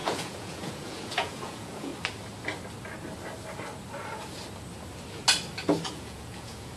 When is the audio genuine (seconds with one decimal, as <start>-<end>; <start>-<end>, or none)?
1.9-5.9